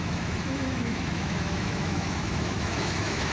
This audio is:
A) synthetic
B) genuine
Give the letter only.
A